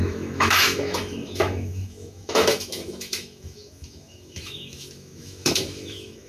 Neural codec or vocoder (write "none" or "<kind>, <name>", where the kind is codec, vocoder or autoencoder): autoencoder, DAC-VAE